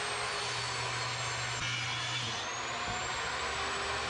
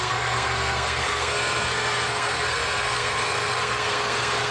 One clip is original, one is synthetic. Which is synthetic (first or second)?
second